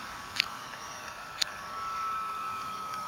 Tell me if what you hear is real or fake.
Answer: fake